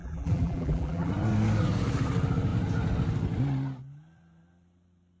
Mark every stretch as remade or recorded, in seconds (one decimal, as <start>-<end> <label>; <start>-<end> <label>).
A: 0.0-1.1 remade; 1.1-5.2 recorded